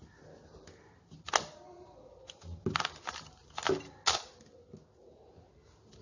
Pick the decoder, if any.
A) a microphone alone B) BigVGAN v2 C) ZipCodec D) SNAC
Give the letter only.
A